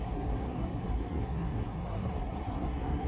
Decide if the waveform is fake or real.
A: fake